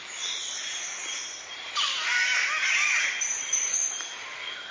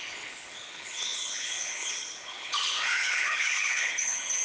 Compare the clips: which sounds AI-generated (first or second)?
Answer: second